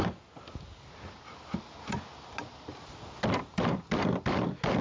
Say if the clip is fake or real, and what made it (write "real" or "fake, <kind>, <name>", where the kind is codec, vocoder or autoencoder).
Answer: real